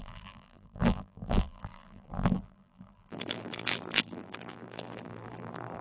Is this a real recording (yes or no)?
no